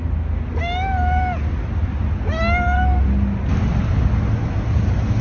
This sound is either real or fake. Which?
real